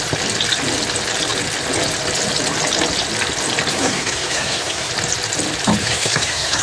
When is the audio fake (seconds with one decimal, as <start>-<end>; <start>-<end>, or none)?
3.7-4.9; 5.8-6.6